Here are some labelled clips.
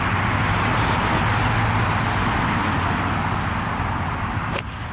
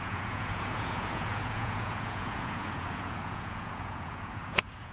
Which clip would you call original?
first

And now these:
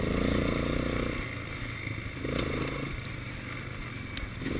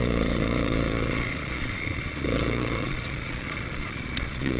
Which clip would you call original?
first